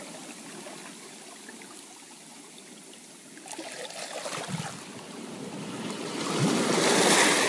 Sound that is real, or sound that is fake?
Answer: real